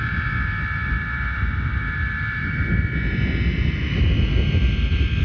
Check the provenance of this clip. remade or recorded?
recorded